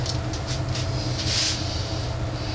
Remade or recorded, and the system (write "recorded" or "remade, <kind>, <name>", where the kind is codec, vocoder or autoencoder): recorded